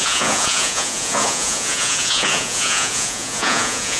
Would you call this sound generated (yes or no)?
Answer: yes